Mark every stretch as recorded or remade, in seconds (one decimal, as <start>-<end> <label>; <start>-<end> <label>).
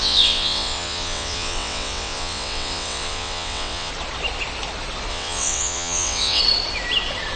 0.0-3.9 remade; 3.9-5.1 recorded; 5.1-6.4 remade; 6.4-7.4 recorded